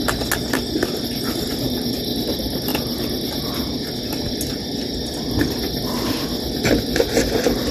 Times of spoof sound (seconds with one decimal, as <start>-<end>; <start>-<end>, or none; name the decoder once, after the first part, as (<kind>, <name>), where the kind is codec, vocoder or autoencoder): none